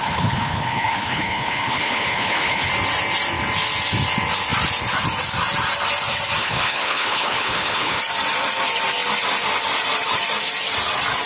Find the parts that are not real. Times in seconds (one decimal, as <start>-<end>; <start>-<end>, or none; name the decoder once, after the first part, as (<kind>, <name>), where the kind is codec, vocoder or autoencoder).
0.0-2.7 (codec, HILCodec); 6.4-8.0